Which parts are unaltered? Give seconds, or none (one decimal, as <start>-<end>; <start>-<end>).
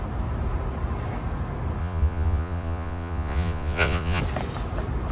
0.0-1.8; 4.2-5.1